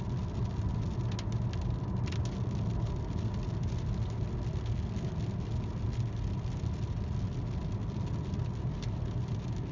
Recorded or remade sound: recorded